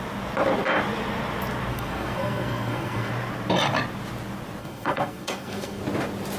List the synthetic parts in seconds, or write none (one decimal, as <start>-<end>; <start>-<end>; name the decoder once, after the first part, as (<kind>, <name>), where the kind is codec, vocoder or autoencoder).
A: 1.7-3.1 (codec, SNAC); 4.6-5.8